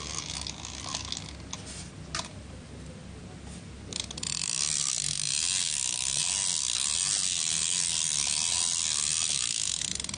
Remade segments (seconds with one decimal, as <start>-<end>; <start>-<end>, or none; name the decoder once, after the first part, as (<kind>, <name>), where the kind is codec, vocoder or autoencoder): none